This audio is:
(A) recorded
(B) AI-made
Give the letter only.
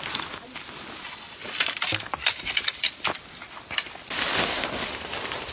A